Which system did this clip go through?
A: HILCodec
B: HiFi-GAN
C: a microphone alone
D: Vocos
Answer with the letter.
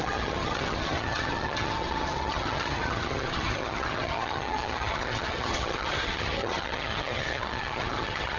B